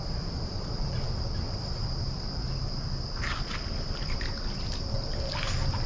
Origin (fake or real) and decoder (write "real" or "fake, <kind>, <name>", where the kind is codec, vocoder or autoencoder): real